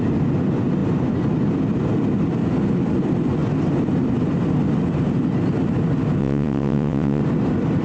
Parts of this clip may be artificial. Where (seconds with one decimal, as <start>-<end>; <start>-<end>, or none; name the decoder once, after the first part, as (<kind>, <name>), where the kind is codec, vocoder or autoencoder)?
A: 6.2-7.2 (vocoder, WaveNeXt)